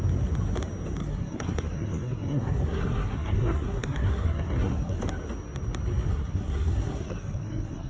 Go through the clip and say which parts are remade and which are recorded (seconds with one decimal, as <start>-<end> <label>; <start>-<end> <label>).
0.0-1.0 recorded; 1.0-5.0 remade; 5.0-6.1 recorded; 6.1-7.9 remade